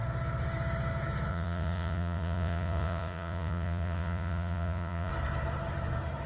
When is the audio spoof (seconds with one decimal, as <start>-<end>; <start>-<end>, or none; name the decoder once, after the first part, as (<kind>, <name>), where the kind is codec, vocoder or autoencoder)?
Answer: 1.3-5.1 (vocoder, Vocos)